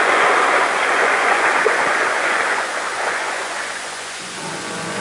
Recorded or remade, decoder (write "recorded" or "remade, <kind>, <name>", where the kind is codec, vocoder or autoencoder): remade, vocoder, Vocos